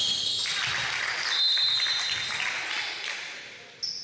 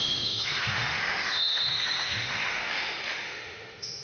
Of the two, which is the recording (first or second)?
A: first